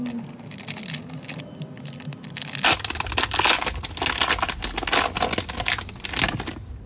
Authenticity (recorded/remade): recorded